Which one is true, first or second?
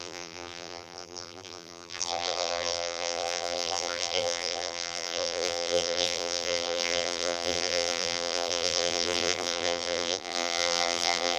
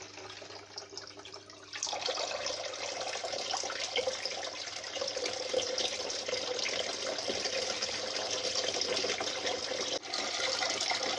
second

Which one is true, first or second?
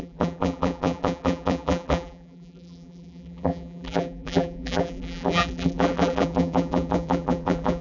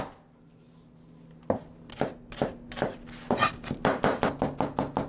second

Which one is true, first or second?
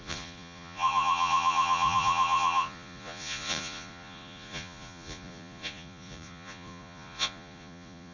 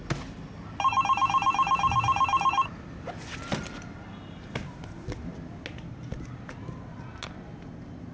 second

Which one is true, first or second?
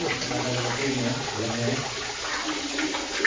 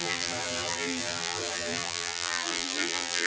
first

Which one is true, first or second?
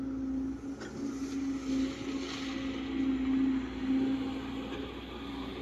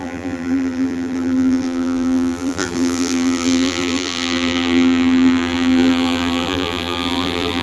first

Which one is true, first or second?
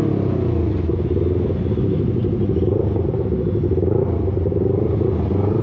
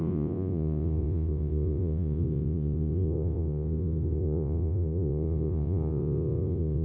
first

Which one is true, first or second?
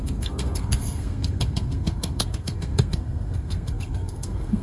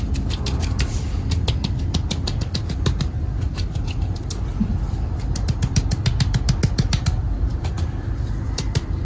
second